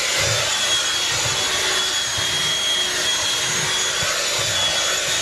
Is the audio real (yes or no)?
yes